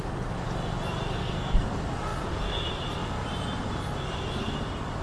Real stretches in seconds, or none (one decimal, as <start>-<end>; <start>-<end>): 0.0-1.2; 1.7-5.0